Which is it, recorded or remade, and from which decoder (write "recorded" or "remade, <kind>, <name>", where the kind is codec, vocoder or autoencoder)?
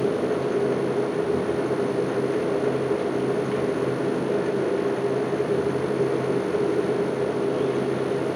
recorded